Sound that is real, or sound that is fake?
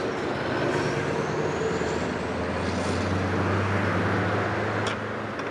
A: real